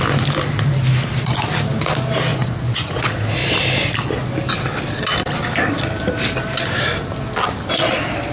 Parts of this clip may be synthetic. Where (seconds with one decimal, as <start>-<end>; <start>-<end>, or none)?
2.3-3.0